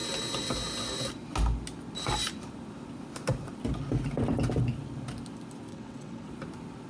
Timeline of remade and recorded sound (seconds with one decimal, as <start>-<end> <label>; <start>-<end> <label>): 0.0-5.7 recorded; 5.7-6.3 remade; 6.3-6.9 recorded